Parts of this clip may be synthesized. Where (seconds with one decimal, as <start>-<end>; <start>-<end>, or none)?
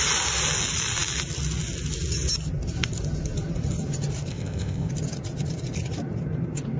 4.3-4.9